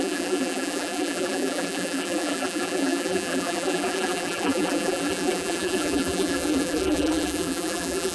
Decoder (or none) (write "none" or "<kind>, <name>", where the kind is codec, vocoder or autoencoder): vocoder, BigVGAN v2